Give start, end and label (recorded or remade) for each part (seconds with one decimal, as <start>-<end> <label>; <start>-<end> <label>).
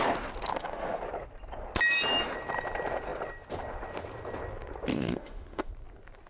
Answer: 0.0-0.5 recorded; 0.5-1.0 remade; 1.0-4.9 recorded; 4.9-5.7 remade; 5.7-6.3 recorded